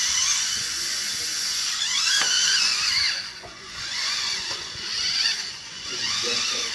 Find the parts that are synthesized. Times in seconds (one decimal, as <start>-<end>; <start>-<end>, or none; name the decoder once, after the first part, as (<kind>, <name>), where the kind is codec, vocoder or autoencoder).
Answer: 0.6-6.7 (vocoder, Vocos)